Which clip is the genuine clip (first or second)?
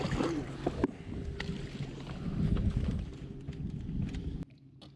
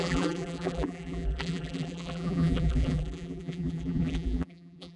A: first